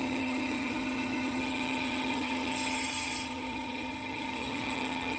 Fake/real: fake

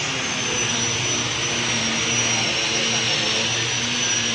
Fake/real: real